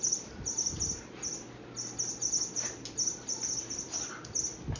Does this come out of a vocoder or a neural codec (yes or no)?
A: no